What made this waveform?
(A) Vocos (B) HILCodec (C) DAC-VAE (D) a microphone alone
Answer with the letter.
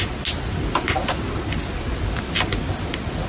D